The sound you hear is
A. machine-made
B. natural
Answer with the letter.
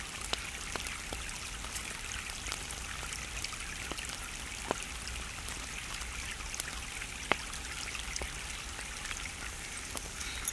B